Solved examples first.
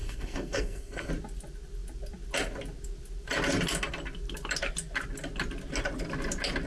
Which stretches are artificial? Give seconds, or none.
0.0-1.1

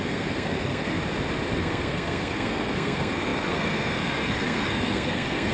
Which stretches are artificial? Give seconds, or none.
0.0-1.0; 1.5-5.5

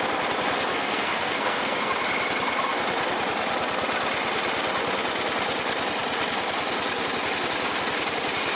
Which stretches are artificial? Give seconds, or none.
0.7-1.9